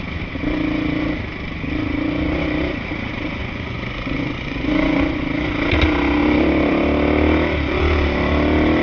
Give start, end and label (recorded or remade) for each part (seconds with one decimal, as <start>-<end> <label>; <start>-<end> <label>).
0.0-3.4 recorded; 3.4-5.2 remade; 5.2-8.8 recorded